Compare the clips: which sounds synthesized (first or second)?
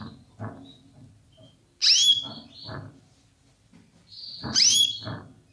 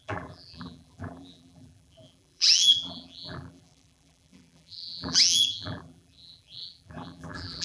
second